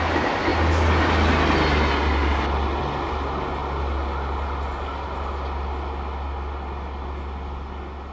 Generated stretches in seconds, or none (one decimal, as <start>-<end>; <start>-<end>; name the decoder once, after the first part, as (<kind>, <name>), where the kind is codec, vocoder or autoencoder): none